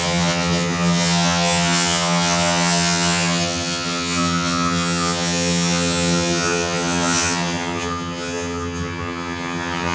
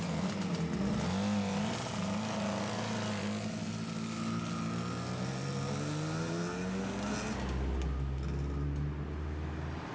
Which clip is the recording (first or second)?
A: second